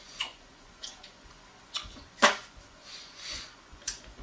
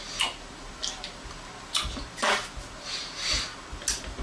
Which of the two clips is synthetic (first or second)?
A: first